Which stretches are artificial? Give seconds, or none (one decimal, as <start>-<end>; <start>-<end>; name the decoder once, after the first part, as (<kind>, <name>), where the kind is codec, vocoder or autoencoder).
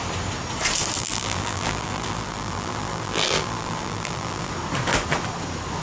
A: 1.0-4.5 (vocoder, BigVGAN v2)